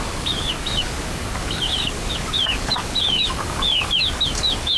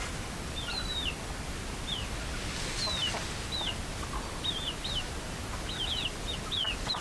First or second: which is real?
second